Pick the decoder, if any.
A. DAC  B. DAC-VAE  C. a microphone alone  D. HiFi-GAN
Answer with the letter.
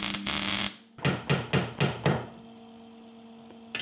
C